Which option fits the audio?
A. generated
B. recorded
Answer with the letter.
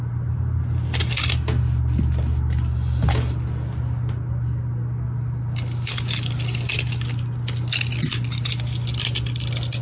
B